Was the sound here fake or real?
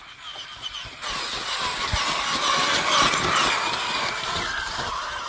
real